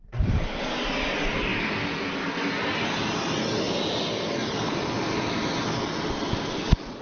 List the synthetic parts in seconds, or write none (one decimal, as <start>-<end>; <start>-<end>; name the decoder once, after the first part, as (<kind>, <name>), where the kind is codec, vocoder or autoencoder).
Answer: none